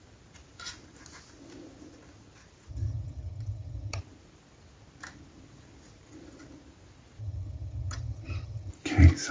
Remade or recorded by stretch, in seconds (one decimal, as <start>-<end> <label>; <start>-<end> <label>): 0.0-2.7 recorded; 2.7-4.0 remade; 4.0-7.2 recorded; 7.2-8.7 remade; 8.7-9.3 recorded